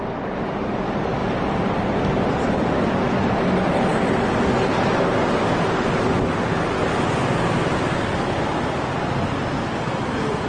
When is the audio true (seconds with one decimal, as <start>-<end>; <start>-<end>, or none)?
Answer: 0.0-10.5